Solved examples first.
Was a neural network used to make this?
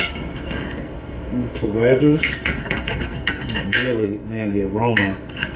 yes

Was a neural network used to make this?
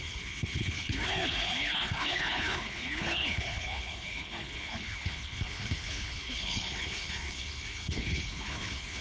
yes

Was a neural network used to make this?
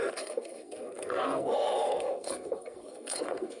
yes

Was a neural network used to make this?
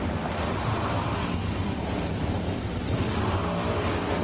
no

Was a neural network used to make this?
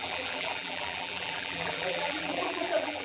yes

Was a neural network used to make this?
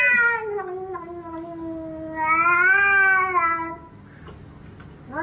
no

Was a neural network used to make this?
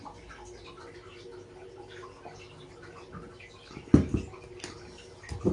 no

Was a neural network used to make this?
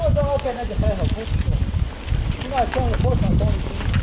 no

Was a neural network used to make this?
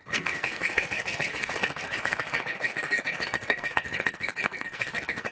yes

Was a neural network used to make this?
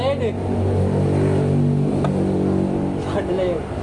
no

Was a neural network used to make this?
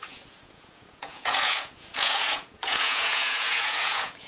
yes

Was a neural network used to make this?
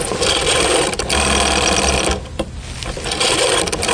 no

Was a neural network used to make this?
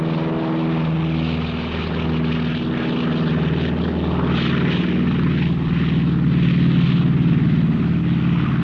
no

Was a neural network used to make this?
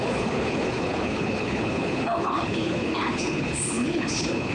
yes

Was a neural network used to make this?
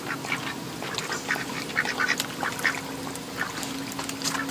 no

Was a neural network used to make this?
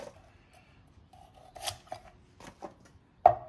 no